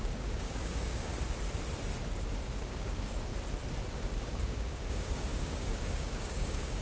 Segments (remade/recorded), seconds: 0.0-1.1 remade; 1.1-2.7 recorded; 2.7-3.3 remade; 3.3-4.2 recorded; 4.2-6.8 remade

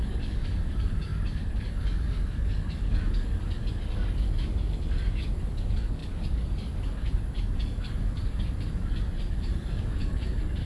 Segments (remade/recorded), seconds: 0.0-10.7 remade

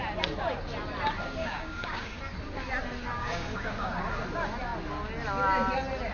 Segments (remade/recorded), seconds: 0.0-1.4 recorded; 1.4-2.2 remade; 2.2-3.2 recorded; 3.2-4.0 remade; 4.0-6.1 recorded